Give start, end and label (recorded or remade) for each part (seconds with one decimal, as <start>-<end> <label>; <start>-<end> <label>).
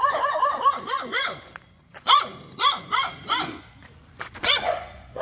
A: 0.0-5.2 remade